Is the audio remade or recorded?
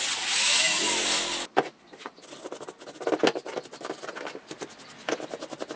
recorded